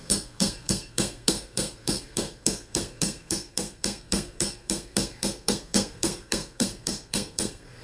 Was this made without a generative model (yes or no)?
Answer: no